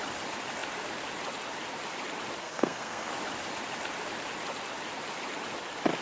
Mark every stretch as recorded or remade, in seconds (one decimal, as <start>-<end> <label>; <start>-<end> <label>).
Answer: 0.0-2.4 recorded; 2.4-3.1 remade; 3.1-6.0 recorded